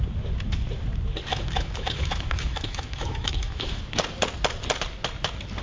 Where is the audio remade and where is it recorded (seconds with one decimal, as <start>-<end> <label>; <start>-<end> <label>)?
0.0-1.3 recorded; 1.3-3.8 remade; 3.8-5.6 recorded